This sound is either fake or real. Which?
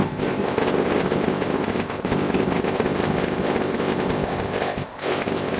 fake